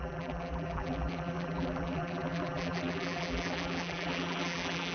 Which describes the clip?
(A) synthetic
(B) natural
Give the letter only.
A